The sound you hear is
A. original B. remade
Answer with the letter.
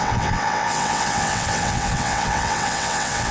B